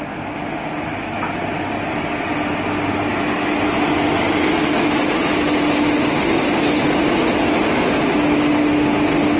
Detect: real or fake real